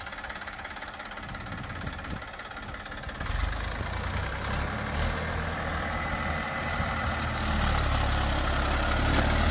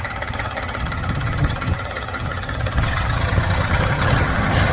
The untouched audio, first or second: first